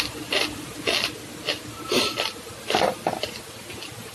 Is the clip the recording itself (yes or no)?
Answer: yes